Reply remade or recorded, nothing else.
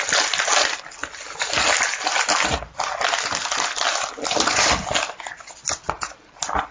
recorded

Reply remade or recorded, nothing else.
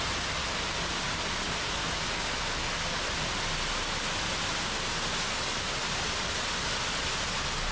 recorded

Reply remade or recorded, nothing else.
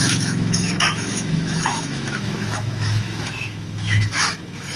remade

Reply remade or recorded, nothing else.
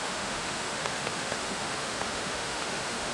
remade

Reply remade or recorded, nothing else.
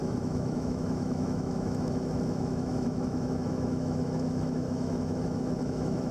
remade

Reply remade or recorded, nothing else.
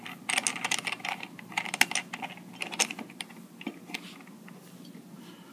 recorded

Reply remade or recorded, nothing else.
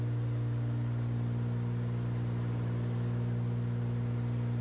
recorded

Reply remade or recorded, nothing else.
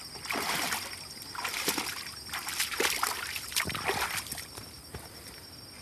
recorded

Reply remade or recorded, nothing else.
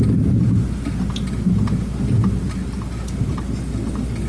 recorded